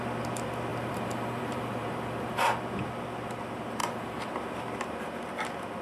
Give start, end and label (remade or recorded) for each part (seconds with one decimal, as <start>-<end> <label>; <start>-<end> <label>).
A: 0.0-0.7 recorded; 0.7-2.4 remade; 2.4-3.8 recorded; 3.8-4.3 remade; 4.3-5.8 recorded